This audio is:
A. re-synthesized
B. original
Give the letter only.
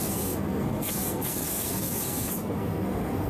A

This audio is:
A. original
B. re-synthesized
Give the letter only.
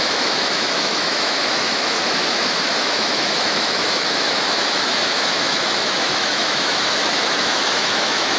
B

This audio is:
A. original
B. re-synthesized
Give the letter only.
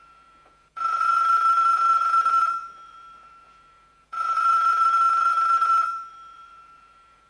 B